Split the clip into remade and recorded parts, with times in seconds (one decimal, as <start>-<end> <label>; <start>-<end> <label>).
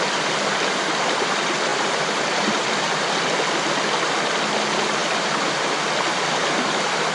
0.0-1.7 recorded; 1.7-2.6 remade; 2.6-7.1 recorded